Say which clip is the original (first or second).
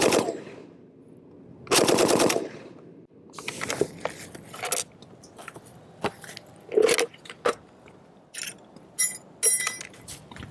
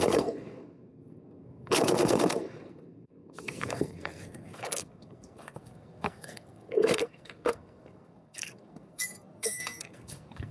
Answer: first